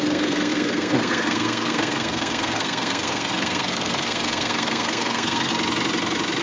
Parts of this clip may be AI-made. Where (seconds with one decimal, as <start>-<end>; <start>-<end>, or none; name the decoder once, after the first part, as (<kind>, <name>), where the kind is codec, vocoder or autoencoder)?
0.0-5.5 (codec, SNAC)